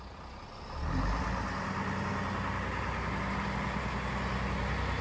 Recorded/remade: recorded